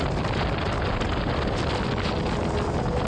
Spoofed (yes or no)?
no